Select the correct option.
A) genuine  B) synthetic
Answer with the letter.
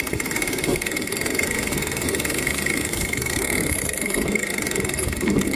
B